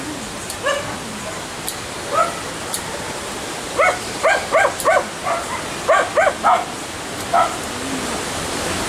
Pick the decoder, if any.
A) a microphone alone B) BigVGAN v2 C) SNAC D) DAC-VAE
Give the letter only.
A